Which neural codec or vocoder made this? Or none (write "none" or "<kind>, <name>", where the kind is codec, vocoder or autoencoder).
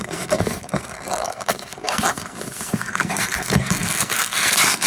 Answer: codec, SNAC